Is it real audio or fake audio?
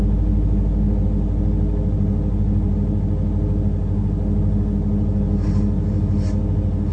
real